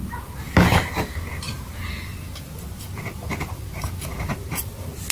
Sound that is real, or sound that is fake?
real